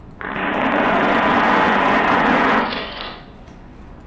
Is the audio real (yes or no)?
no